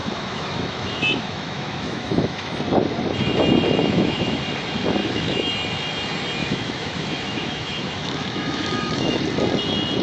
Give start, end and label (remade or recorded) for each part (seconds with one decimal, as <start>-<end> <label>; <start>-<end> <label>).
0.0-2.6 remade; 2.6-3.8 recorded; 3.8-4.4 remade; 4.4-5.0 recorded; 5.0-5.5 remade; 5.5-6.4 recorded; 6.4-9.2 remade; 9.2-10.0 recorded